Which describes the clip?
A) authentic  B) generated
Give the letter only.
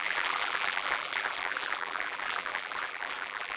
B